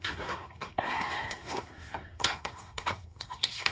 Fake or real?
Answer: fake